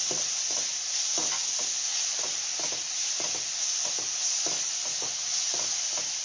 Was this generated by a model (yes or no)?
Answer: no